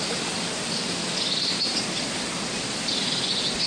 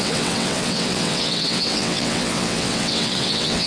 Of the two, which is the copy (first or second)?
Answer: second